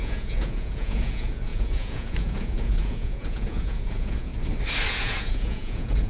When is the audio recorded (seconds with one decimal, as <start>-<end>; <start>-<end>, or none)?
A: 4.3-4.9